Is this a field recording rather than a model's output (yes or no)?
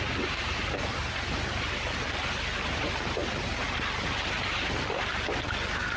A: yes